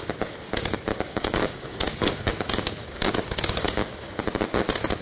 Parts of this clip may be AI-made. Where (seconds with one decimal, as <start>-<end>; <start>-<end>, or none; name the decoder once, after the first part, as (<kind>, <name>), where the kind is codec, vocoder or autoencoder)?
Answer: 0.9-3.9 (codec, DAC)